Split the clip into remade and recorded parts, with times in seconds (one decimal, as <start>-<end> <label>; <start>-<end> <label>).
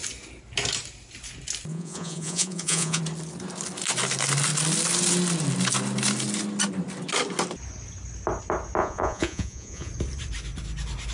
0.0-1.7 recorded; 1.7-3.0 remade; 3.0-8.8 recorded; 8.8-9.9 remade; 9.9-11.1 recorded